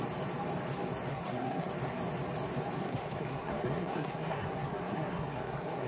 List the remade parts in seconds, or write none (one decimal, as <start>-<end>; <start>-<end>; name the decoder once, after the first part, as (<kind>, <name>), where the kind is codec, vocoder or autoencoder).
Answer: 1.1-1.7 (codec, SNAC); 2.8-5.9